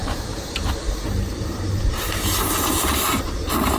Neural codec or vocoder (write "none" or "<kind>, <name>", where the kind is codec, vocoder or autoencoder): vocoder, BigVGAN v2